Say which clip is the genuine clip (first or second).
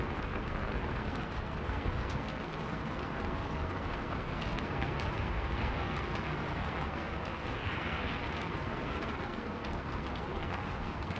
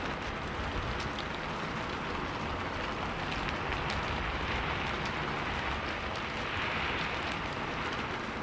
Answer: second